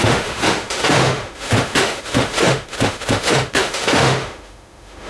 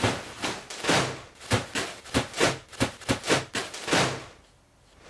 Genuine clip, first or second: second